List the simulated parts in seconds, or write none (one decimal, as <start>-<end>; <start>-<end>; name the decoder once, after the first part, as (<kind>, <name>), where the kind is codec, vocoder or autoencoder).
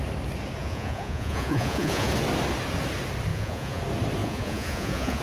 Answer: 0.6-2.1 (vocoder, Vocos); 3.3-3.8; 4.2-5.2